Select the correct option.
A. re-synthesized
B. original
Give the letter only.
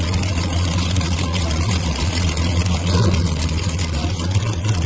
A